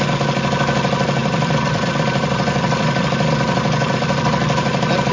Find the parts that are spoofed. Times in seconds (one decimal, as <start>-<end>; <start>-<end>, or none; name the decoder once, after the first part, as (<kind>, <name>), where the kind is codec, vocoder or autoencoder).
1.2-4.3 (vocoder, BigVGAN v2)